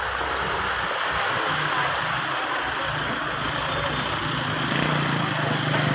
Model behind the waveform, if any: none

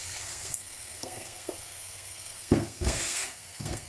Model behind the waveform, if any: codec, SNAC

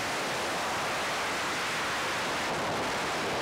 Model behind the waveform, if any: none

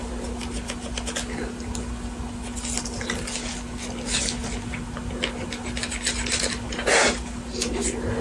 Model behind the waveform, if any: none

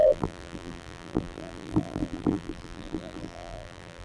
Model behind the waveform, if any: vocoder, BigVGAN v2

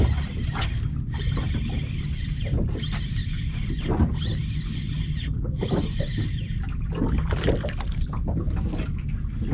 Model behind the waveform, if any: none